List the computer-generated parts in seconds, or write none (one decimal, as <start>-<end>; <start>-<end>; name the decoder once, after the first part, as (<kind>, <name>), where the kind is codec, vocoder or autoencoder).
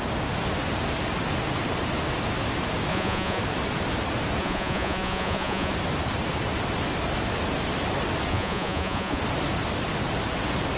2.9-3.4 (vocoder, Vocos); 4.4-5.7; 8.3-9.2